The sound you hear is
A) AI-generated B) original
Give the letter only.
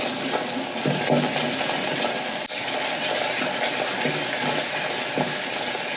B